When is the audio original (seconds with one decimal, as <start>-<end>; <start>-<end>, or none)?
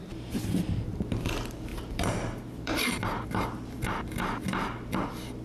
1.1-1.7; 3.0-5.4